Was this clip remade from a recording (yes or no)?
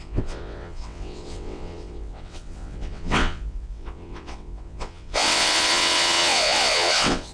yes